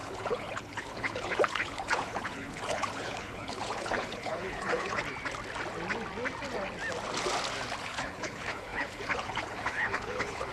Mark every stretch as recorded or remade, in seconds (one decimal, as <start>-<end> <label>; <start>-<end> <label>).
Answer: 0.0-5.0 remade; 5.0-7.8 recorded; 7.8-10.5 remade